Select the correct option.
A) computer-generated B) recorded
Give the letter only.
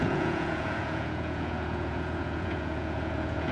A